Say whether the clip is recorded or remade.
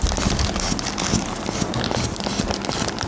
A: recorded